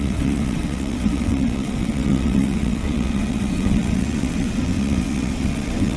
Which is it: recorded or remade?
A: remade